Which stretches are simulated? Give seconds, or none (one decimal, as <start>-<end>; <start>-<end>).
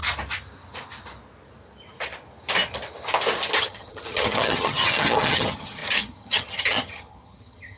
3.6-7.8